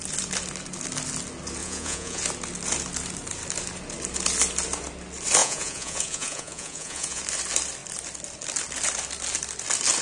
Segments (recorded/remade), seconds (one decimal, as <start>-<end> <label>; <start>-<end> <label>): 0.0-1.6 recorded; 1.6-2.2 remade; 2.2-5.4 recorded; 5.4-7.2 remade; 7.2-10.0 recorded